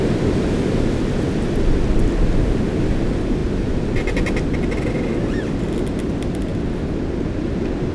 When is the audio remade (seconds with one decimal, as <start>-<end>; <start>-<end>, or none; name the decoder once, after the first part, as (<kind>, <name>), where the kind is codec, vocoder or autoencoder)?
none